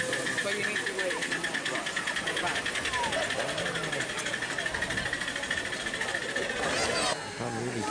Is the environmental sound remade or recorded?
recorded